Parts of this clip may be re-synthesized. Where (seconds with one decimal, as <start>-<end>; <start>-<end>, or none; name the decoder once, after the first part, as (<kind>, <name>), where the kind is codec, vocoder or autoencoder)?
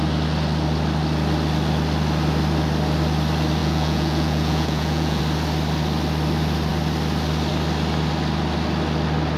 3.6-5.2 (vocoder, Vocos)